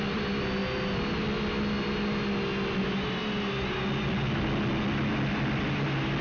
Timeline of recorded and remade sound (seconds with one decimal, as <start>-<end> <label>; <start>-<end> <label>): 0.0-6.2 recorded